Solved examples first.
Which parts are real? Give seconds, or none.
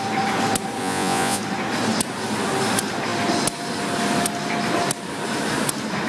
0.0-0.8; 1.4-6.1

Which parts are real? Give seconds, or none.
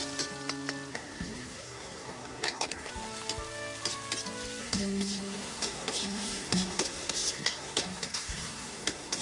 0.0-0.9; 2.9-4.6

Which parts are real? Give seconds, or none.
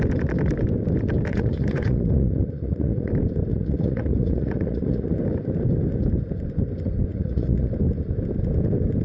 0.0-1.3; 3.1-3.5; 5.2-7.1; 7.7-9.0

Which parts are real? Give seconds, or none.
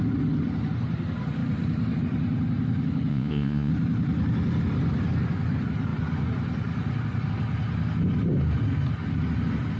0.0-3.1; 3.7-9.8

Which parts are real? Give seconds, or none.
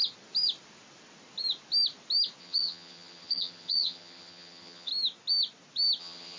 0.0-2.4; 4.9-6.0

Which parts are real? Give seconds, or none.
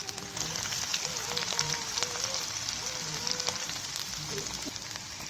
0.0-5.3